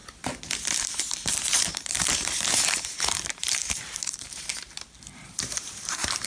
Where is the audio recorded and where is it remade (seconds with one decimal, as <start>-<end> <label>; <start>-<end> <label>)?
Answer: 0.0-1.0 recorded; 1.0-6.3 remade